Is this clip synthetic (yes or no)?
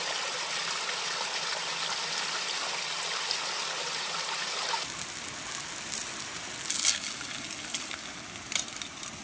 no